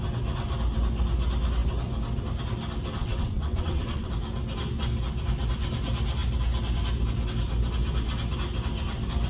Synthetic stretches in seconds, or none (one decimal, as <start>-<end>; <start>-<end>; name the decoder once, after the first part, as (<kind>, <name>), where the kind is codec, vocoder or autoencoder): 3.0-4.1 (vocoder, WaveNeXt)